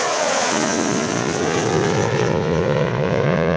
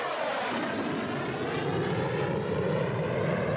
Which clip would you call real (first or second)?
second